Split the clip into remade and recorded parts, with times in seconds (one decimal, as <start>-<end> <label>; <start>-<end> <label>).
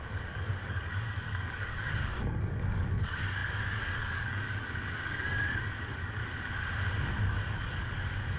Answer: 0.0-6.2 remade; 6.2-7.3 recorded; 7.3-8.4 remade